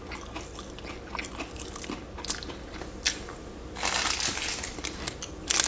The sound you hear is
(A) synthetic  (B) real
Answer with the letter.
B